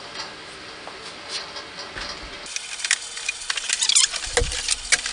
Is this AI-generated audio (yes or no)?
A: no